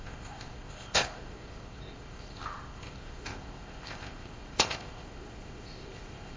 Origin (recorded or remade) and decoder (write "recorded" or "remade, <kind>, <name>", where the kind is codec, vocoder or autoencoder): remade, codec, ZipCodec